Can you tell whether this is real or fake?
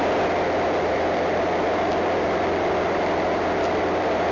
real